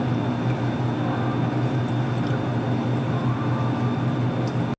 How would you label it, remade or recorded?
recorded